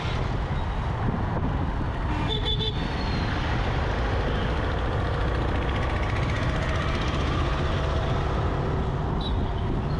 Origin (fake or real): real